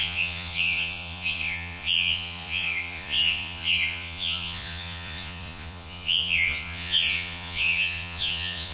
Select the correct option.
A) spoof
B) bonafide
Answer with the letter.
A